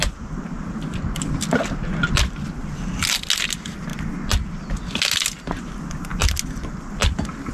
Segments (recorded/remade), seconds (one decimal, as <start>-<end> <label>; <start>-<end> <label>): 0.0-7.5 recorded